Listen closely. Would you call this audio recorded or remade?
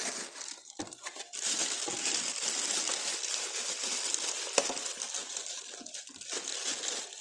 recorded